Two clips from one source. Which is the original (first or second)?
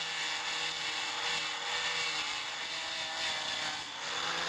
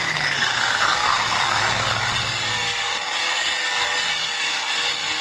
first